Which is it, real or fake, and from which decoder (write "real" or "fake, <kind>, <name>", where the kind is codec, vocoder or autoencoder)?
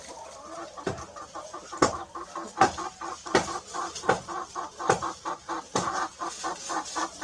real